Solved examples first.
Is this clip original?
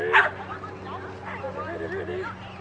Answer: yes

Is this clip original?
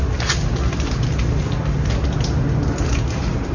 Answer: yes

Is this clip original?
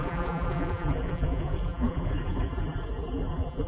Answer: no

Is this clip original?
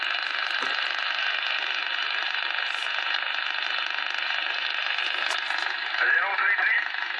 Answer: yes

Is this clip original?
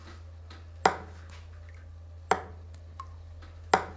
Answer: yes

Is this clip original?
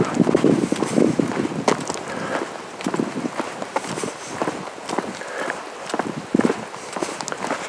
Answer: yes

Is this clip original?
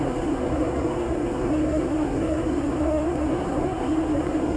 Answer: no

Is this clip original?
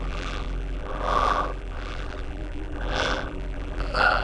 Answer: no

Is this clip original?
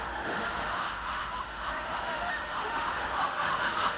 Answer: no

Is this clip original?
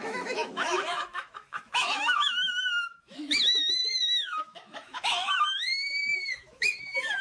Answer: no